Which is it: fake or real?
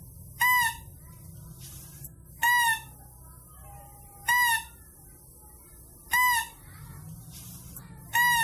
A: real